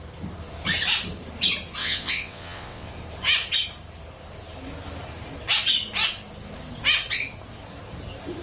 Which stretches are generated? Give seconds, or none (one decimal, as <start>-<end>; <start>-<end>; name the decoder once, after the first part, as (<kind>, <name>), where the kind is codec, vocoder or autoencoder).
1.8-2.9 (vocoder, WaveNeXt)